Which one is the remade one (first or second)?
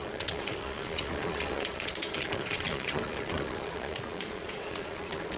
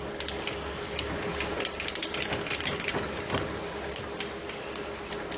first